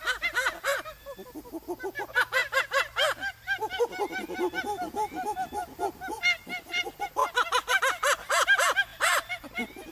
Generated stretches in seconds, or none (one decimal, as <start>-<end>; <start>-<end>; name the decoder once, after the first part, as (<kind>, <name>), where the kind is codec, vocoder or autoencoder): 7.2-7.8 (vocoder, BigVGAN v2); 8.9-9.9